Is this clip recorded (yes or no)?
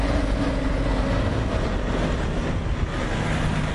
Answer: yes